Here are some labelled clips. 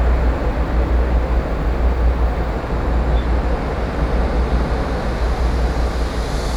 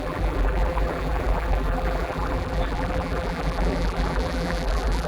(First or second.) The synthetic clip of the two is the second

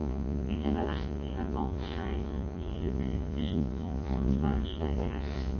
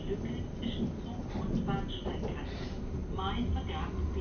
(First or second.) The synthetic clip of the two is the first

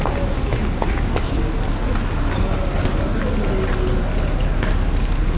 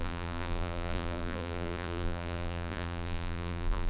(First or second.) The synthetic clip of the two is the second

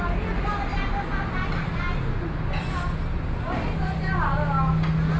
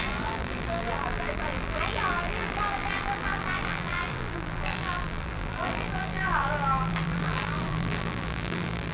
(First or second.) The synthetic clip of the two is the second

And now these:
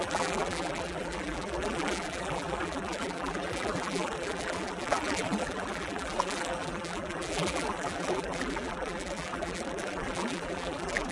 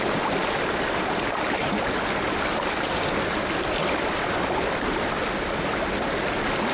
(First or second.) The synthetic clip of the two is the first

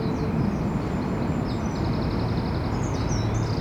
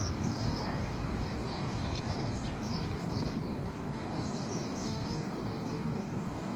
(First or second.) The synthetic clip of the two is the second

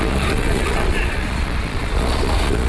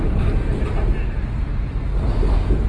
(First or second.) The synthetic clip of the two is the first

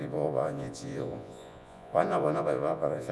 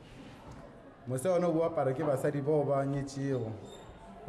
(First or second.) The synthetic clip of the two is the first